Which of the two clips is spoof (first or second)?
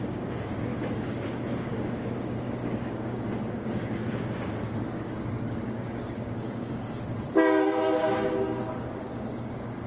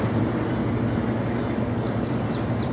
first